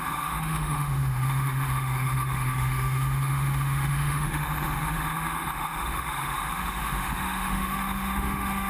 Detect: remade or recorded remade